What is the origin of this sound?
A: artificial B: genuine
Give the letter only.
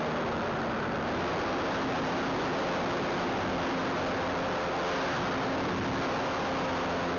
B